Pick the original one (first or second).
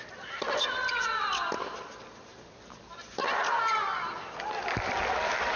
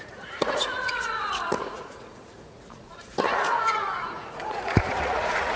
first